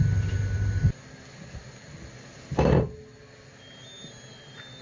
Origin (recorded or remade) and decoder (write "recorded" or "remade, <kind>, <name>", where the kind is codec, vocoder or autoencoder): recorded